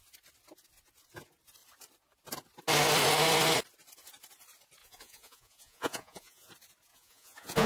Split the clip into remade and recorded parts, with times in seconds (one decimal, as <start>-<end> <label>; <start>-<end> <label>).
0.0-4.8 recorded; 4.8-6.5 remade; 6.5-6.9 recorded; 6.9-7.7 remade